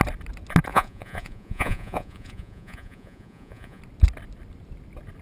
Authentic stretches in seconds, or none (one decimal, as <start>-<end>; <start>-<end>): 0.0-0.7; 3.8-5.2